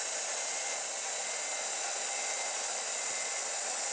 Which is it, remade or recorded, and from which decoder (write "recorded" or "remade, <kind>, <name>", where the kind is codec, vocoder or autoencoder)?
recorded